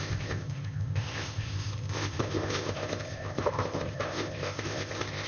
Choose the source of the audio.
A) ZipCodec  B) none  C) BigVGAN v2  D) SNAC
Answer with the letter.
A